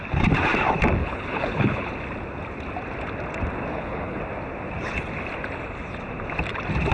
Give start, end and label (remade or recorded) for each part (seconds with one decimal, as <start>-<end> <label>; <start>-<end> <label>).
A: 0.0-1.0 recorded; 1.0-1.9 remade; 1.9-3.7 recorded; 3.7-4.2 remade; 4.2-6.9 recorded